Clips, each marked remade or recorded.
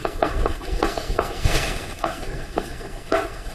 remade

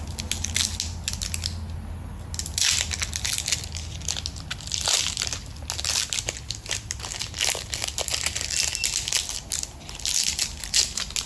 recorded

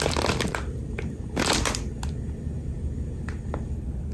recorded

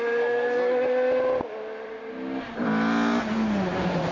recorded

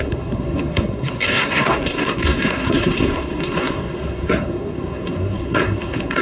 remade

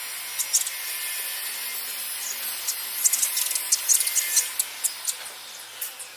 recorded